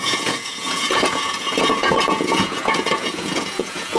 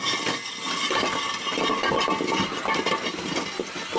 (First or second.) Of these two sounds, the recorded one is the second